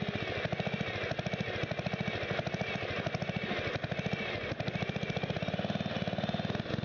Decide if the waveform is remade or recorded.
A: recorded